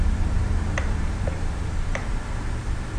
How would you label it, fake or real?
fake